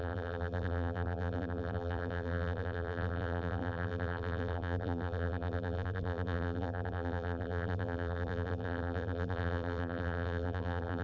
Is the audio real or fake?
fake